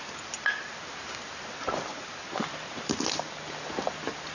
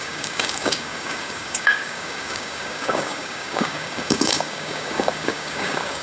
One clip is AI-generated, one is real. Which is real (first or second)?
first